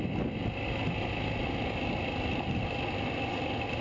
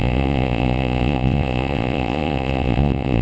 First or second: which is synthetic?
second